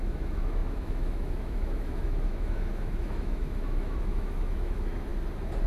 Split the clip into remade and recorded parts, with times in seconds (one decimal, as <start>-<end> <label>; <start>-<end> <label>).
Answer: 0.0-5.1 remade; 5.1-5.7 recorded